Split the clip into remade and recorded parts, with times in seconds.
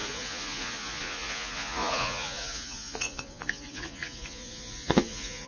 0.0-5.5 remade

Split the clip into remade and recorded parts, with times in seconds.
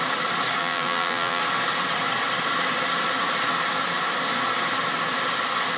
0.0-0.6 recorded; 0.6-1.4 remade; 1.4-5.8 recorded